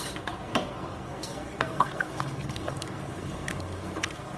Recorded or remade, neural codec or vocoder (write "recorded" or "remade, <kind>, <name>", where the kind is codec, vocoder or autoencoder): remade, codec, SNAC